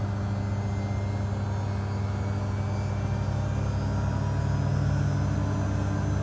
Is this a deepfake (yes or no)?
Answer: no